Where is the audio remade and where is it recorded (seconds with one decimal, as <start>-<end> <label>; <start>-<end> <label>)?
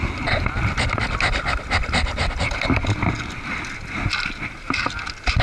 0.0-5.4 recorded